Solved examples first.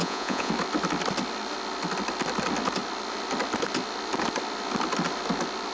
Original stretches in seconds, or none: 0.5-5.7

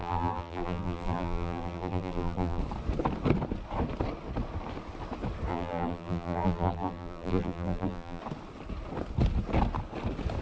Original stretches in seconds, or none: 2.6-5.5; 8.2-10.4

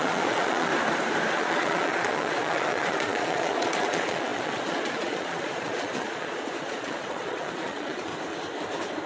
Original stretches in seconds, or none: 0.7-1.3; 8.1-9.1

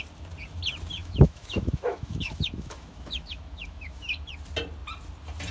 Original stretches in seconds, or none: 0.0-1.0; 4.3-5.5

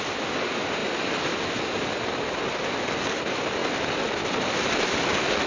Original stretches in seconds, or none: 0.0-5.5

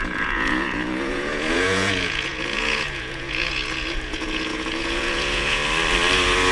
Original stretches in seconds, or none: 5.6-6.5